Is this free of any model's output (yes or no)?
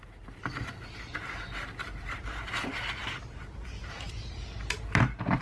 yes